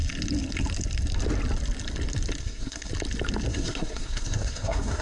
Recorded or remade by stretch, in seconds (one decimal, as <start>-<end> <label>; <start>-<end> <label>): 0.0-2.4 recorded; 2.4-2.9 remade; 2.9-3.5 recorded; 3.5-5.0 remade

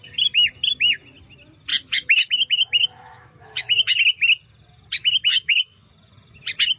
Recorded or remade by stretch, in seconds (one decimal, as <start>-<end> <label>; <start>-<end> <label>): 0.0-1.7 recorded; 1.7-4.0 remade; 4.0-5.3 recorded; 5.3-5.9 remade; 5.9-6.8 recorded

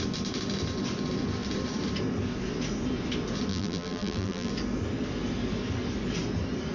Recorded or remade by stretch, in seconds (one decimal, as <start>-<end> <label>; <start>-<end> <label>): 0.0-3.5 recorded; 3.5-4.5 remade; 4.5-6.7 recorded